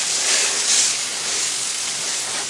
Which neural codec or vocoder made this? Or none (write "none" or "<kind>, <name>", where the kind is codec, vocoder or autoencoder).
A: codec, DAC